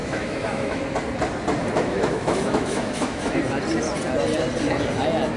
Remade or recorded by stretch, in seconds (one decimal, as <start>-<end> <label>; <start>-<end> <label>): 0.0-0.8 remade; 0.8-1.6 recorded; 1.6-3.4 remade; 3.4-5.4 recorded